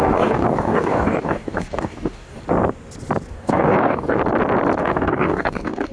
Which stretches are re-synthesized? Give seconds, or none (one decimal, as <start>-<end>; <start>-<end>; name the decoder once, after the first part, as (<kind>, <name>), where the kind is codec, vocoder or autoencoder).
0.0-2.4 (codec, DAC); 3.3-4.2; 4.8-5.9